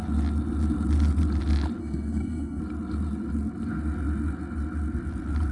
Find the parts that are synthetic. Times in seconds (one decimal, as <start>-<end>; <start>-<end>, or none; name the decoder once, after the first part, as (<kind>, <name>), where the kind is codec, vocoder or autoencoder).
1.8-2.6 (codec, SNAC)